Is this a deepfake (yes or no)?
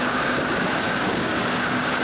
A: yes